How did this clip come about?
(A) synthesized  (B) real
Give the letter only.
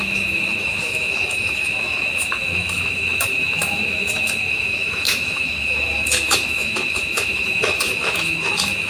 A